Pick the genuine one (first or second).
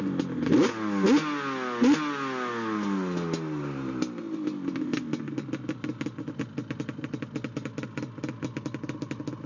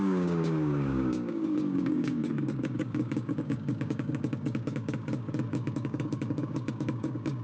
first